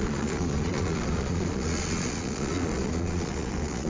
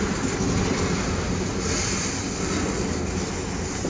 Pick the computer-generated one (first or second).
first